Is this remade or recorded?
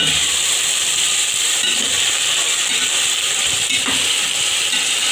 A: remade